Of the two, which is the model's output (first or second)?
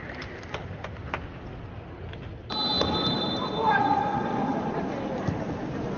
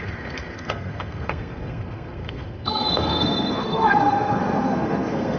second